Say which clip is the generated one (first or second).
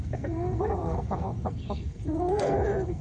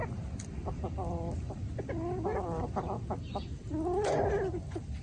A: first